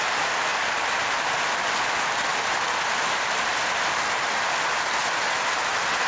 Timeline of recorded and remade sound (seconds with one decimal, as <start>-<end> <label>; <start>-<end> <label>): 0.0-6.1 recorded